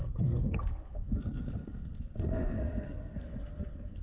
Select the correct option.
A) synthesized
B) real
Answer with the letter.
A